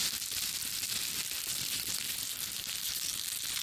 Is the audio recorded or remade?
recorded